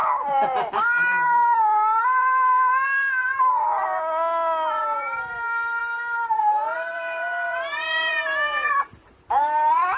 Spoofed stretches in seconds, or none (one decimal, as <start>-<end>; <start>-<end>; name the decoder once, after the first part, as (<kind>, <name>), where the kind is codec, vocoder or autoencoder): 0.0-3.8 (vocoder, BigVGAN v2); 4.8-10.0